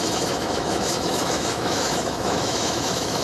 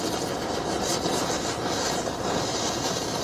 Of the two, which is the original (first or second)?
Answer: second